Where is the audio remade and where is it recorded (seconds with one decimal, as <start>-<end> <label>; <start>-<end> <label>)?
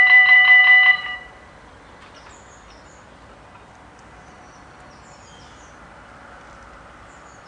0.0-0.6 remade; 0.6-4.0 recorded; 4.0-7.5 remade